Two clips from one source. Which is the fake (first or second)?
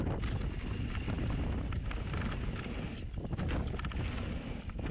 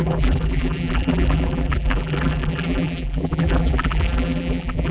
second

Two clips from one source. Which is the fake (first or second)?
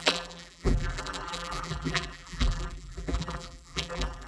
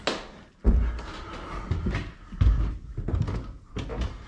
first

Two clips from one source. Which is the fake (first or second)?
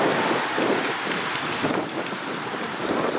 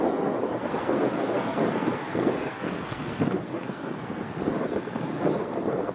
second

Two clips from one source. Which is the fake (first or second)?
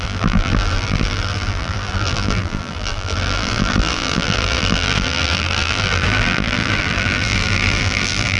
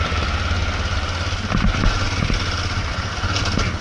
first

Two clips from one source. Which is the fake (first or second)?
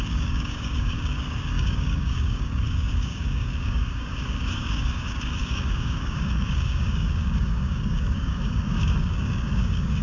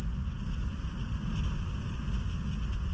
first